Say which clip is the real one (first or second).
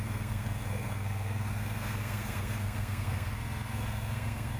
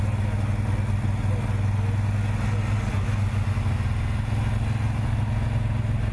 second